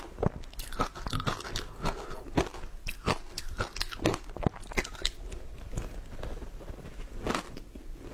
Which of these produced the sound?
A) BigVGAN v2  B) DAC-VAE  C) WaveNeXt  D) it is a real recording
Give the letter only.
D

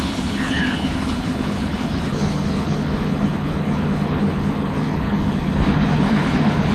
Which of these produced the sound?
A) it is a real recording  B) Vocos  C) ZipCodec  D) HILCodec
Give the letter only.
D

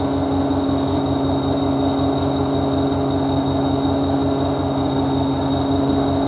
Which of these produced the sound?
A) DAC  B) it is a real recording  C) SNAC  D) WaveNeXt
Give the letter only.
B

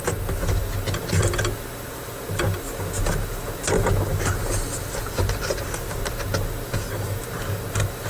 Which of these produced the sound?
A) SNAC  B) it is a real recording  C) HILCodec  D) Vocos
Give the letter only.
B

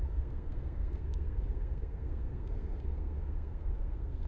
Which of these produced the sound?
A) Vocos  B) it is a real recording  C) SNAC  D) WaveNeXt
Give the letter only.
C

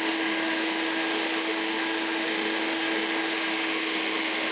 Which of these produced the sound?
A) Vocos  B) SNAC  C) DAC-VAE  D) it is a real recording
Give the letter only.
C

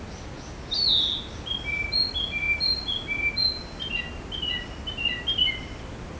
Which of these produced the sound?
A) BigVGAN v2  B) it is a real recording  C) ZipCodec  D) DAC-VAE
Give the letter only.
B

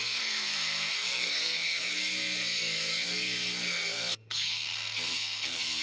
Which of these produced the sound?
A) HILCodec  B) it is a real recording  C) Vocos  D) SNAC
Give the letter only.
D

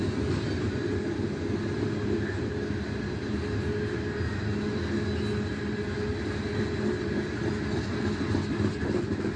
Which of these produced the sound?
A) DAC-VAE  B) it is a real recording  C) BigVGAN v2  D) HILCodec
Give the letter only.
B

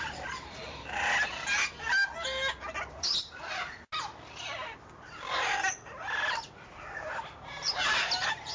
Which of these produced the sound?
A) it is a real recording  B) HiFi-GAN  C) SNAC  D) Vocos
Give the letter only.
A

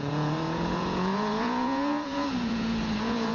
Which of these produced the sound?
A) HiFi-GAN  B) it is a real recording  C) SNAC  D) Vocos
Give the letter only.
D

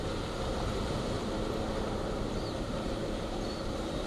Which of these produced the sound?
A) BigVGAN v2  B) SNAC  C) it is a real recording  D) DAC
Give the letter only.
C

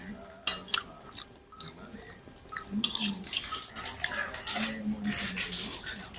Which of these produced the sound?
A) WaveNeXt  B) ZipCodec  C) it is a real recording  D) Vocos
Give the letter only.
C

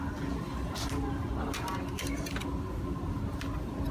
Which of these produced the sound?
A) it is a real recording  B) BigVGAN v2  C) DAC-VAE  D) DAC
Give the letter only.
A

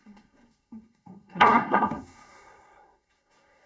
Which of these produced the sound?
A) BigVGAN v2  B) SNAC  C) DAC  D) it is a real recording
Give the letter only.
B